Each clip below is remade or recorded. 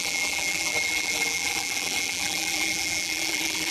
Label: remade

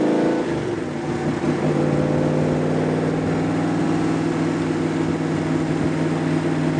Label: recorded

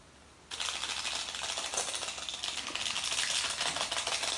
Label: recorded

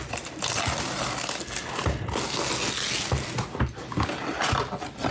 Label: recorded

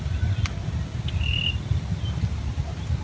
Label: recorded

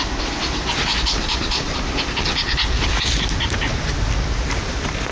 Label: recorded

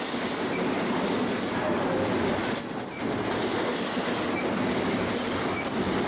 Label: recorded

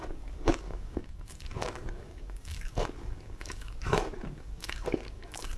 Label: remade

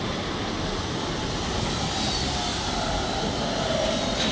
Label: recorded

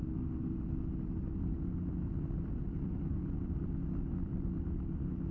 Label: recorded